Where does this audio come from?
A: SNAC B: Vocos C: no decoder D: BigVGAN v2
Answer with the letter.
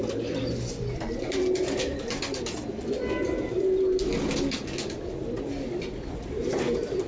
C